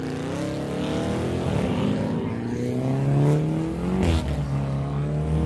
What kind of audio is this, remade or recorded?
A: recorded